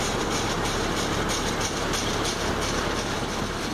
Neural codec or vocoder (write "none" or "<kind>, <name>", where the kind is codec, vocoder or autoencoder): vocoder, BigVGAN v2